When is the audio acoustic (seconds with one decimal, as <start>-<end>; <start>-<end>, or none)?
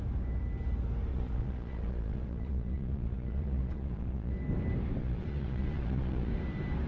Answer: 0.0-1.1; 4.3-5.0; 6.3-6.9